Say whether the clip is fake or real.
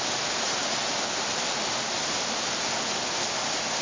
real